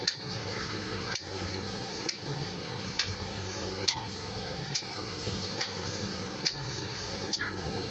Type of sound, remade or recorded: remade